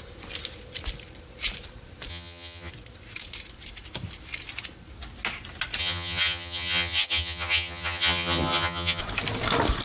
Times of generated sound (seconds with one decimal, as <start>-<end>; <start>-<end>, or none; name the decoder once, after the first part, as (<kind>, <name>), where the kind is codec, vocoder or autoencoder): 2.1-2.7 (vocoder, HiFi-GAN); 5.8-9.0